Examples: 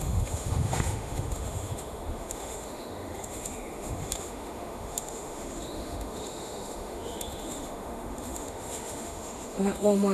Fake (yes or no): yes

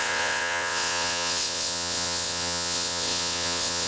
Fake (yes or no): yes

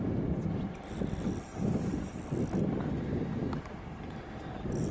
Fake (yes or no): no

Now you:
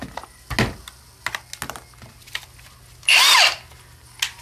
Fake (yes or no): no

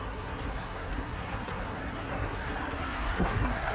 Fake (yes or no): yes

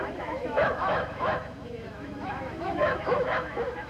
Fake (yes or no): yes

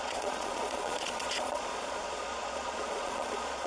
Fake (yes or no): yes